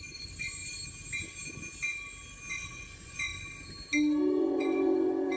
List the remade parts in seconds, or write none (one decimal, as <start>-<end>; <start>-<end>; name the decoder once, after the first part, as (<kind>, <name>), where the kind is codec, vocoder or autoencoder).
0.0-0.6 (vocoder, Vocos); 2.5-3.3; 4.4-5.4